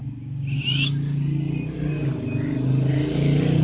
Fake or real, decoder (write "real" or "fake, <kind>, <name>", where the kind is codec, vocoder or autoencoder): real